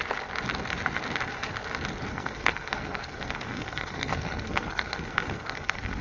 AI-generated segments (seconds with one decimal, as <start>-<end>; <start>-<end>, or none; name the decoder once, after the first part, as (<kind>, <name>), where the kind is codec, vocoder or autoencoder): 2.1-6.0 (codec, SNAC)